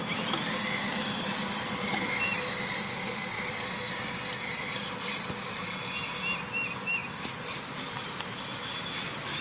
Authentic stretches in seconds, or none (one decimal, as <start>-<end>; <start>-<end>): 0.0-2.8; 3.5-9.4